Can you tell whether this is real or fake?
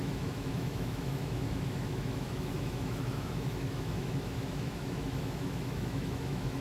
fake